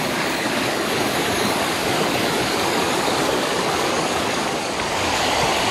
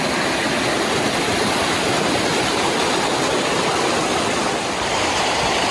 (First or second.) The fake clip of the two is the first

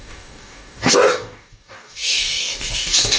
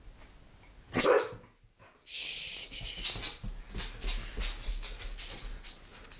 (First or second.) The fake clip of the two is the first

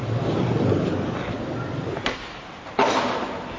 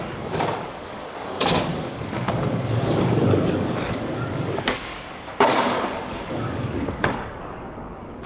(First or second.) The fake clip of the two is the second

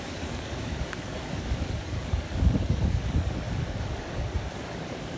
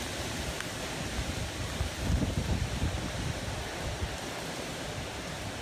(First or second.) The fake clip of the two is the first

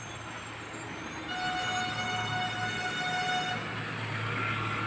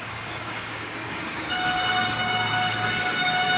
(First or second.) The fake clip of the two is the second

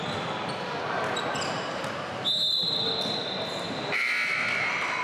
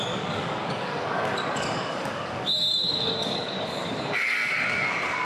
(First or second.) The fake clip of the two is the second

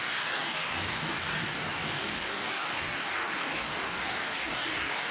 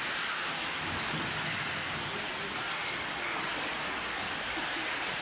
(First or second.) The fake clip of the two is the first